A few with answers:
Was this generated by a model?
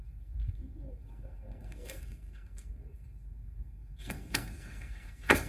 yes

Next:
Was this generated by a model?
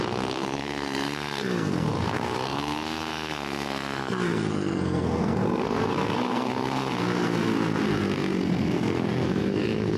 yes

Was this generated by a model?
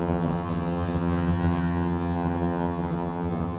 yes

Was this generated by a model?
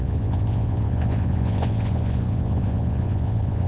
yes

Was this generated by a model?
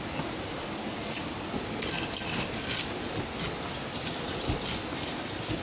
no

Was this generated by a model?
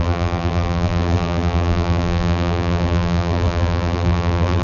yes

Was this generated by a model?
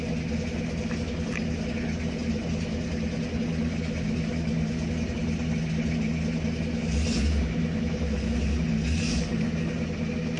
no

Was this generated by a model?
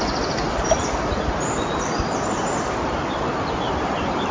no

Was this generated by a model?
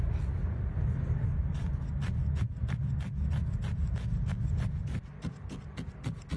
no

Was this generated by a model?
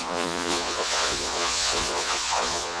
yes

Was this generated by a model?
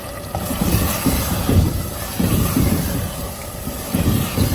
yes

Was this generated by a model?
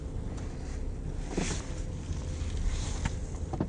no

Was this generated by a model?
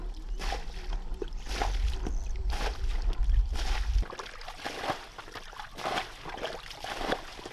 no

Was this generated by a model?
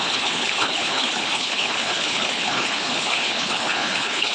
yes